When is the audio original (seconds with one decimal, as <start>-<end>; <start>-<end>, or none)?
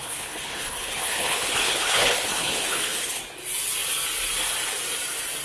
3.2-5.4